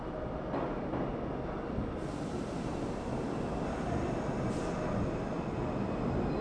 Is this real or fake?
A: real